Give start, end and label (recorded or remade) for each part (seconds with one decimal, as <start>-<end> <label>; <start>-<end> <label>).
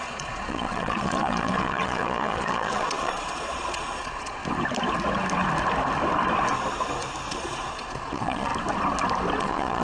0.0-4.4 remade; 4.4-7.3 recorded; 7.3-8.5 remade; 8.5-9.4 recorded; 9.4-9.8 remade